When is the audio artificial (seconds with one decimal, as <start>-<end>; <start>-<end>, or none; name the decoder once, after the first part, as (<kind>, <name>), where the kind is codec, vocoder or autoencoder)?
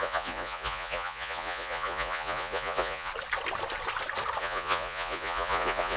0.0-3.1 (vocoder, Vocos); 4.4-6.0